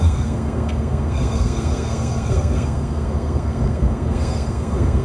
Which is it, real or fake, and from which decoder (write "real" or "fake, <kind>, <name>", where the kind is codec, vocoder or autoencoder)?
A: fake, codec, SNAC